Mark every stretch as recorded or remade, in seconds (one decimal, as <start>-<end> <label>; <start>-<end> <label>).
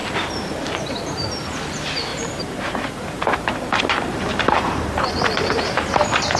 0.0-1.4 remade; 1.4-2.1 recorded; 2.1-5.1 remade; 5.1-6.4 recorded